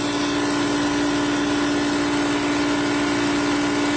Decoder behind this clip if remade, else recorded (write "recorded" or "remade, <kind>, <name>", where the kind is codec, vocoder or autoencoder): recorded